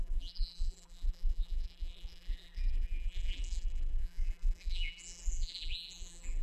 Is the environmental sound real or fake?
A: fake